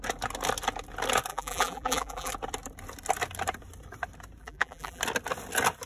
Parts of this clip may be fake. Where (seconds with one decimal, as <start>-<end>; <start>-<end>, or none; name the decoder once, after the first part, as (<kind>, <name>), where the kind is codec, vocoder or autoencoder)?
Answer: 1.3-2.3 (vocoder, BigVGAN v2); 4.4-5.0